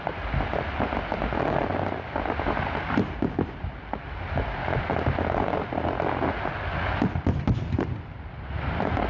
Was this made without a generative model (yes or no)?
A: yes